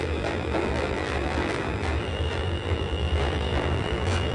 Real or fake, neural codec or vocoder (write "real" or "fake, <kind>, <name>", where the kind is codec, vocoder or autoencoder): fake, vocoder, BigVGAN v2